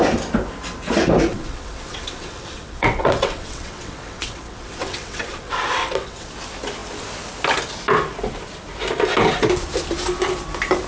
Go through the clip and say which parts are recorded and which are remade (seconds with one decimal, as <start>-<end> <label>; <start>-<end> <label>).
0.0-1.3 recorded; 1.3-6.3 remade; 6.3-10.9 recorded